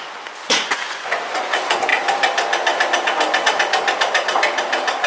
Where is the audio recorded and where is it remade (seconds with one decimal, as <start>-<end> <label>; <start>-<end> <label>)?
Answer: 0.0-1.9 remade; 1.9-5.1 recorded